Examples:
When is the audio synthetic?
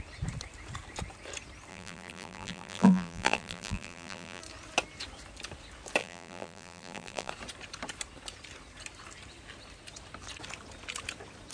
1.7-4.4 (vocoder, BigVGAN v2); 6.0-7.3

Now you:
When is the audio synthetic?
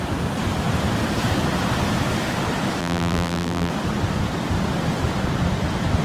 2.8-3.7 (vocoder, BigVGAN v2)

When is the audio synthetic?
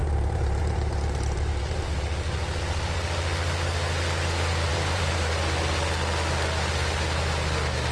0.0-1.9 (vocoder, BigVGAN v2); 4.7-5.3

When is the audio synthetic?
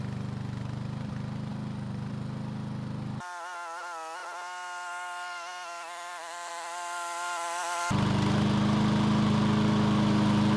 none